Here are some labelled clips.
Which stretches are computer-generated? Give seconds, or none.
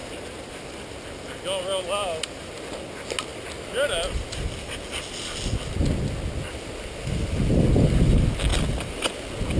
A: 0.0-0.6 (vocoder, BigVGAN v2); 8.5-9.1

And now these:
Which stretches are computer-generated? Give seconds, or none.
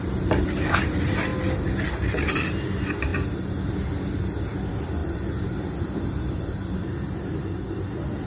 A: 0.0-1.3 (vocoder, BigVGAN v2); 1.9-3.1; 4.6-8.3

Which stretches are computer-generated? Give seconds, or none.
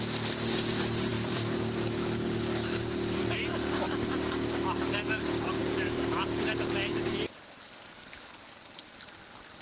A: 1.1-3.8 (vocoder, BigVGAN v2); 5.6-6.5; 8.0-8.9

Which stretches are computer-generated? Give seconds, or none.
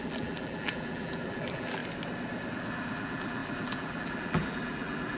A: 0.0-1.8 (vocoder, BigVGAN v2); 2.5-5.2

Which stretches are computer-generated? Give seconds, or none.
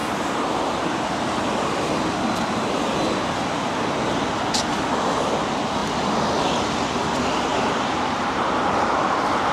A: 7.5-8.9 (vocoder, BigVGAN v2)